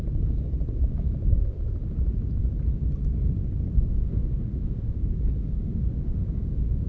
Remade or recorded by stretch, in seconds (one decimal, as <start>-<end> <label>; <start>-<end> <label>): 0.0-4.0 recorded; 4.0-5.0 remade; 5.0-5.4 recorded; 5.4-6.9 remade